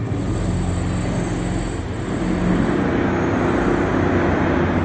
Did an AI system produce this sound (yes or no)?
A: no